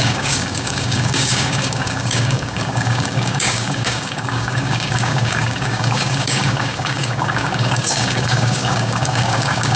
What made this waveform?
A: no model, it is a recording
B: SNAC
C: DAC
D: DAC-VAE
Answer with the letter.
C